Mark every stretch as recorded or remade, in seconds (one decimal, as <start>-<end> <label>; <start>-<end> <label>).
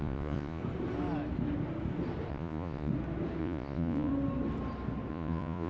0.0-0.6 remade; 0.6-2.3 recorded; 2.3-2.9 remade; 2.9-3.4 recorded; 3.4-4.1 remade; 4.1-5.1 recorded; 5.1-5.7 remade